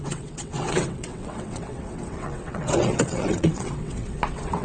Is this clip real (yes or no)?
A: no